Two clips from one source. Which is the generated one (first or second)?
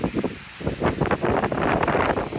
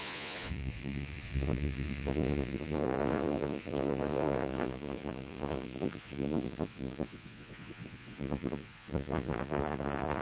second